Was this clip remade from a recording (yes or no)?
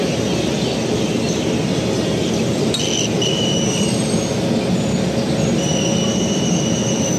no